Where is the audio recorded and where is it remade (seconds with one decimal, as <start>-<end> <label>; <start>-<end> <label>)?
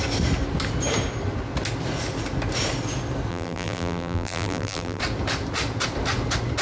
0.0-3.3 recorded; 3.3-5.0 remade; 5.0-6.6 recorded